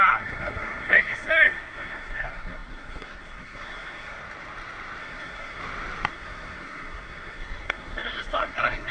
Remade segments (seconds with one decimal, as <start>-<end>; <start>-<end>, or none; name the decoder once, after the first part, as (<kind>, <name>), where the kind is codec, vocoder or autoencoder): 0.0-4.2 (codec, SNAC); 5.0-5.6; 6.1-8.9